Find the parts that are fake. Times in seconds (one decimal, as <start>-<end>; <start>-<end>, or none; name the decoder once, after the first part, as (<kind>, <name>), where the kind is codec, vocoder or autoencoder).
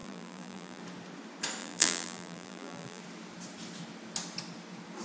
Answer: 0.0-0.8 (vocoder, BigVGAN v2); 1.6-3.0